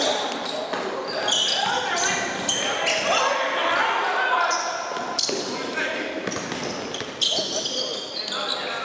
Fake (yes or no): no